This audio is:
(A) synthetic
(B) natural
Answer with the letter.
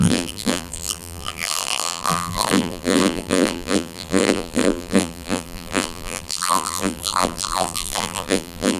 A